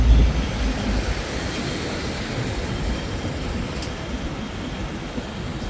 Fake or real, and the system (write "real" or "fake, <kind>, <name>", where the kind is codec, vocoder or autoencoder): real